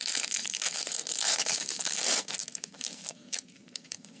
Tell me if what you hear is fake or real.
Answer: fake